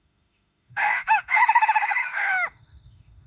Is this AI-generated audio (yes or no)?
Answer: yes